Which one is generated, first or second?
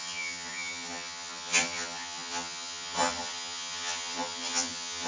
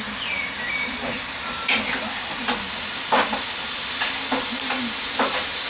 first